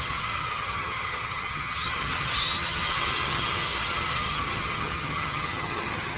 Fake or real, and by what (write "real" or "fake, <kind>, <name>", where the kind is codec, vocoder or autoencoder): fake, vocoder, HiFi-GAN